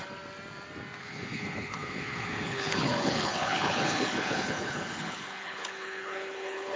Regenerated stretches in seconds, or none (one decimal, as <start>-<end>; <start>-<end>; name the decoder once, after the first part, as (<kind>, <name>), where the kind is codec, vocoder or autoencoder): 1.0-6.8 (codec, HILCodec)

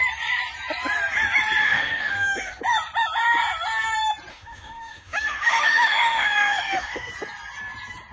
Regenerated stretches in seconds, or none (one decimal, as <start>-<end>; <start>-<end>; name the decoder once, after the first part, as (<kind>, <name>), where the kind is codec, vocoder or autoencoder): 1.6-2.6 (autoencoder, DAC-VAE); 4.3-7.1

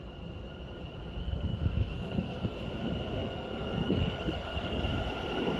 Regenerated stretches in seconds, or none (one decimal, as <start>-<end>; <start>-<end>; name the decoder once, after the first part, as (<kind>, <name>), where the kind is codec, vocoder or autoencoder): 1.2-2.6 (codec, SNAC); 3.2-4.8